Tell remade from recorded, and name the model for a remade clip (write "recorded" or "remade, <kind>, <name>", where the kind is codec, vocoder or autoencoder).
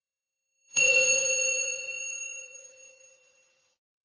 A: remade, vocoder, Vocos